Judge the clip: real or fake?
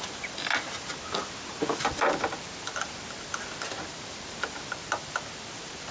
real